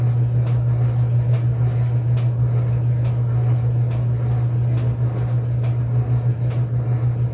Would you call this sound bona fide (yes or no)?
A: yes